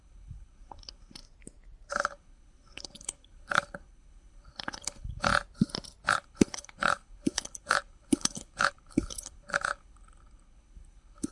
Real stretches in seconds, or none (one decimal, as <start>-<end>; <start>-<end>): 1.2-1.9; 5.3-6.1